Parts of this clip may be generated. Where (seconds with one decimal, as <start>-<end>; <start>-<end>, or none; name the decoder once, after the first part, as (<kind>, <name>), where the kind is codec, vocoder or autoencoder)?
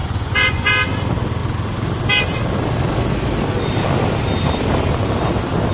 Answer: 0.0-0.7 (vocoder, Vocos)